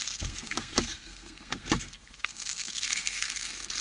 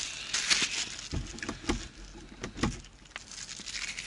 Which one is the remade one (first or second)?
first